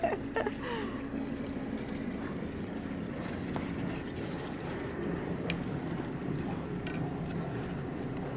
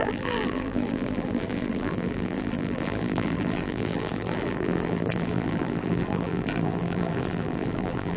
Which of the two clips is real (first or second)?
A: first